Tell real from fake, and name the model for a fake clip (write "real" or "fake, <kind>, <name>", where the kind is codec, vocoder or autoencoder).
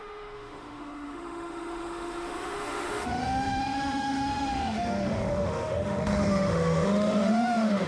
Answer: fake, autoencoder, DAC-VAE